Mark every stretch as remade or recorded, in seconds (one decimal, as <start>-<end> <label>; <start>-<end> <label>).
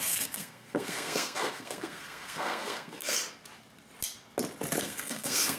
0.0-3.2 remade; 3.2-4.8 recorded; 4.8-5.6 remade